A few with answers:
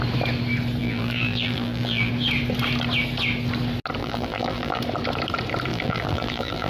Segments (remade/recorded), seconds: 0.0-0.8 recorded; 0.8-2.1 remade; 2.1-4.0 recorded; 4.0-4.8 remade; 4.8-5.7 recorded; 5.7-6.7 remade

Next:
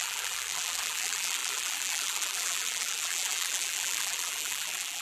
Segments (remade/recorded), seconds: 0.0-5.0 remade

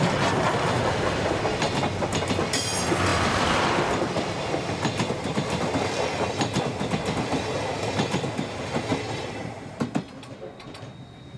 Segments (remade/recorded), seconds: 0.0-3.1 recorded; 3.1-5.7 remade; 5.7-8.9 recorded; 8.9-9.8 remade; 9.8-11.4 recorded

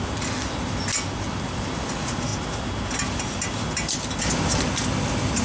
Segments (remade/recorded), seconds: 0.0-5.4 recorded

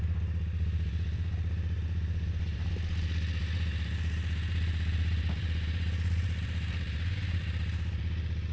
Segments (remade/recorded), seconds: 0.0-0.9 recorded; 0.9-2.7 remade; 2.7-3.4 recorded; 3.4-8.0 remade; 8.0-8.5 recorded

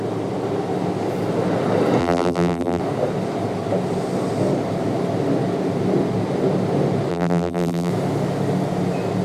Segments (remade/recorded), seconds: 0.0-2.0 recorded; 2.0-2.8 remade; 2.8-7.1 recorded; 7.1-7.9 remade; 7.9-9.2 recorded

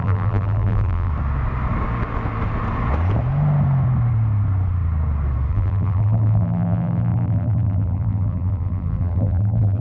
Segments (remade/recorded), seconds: 0.0-1.1 remade; 1.1-5.5 recorded; 5.5-9.8 remade

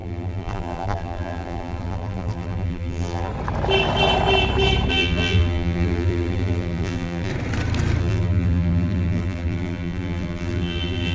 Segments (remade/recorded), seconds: 0.0-3.3 remade; 3.3-4.9 recorded; 4.9-7.3 remade; 7.3-8.0 recorded; 8.0-11.1 remade